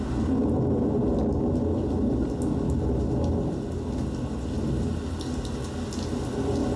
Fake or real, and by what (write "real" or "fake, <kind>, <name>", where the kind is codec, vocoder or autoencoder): real